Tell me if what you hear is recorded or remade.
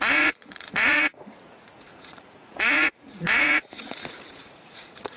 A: remade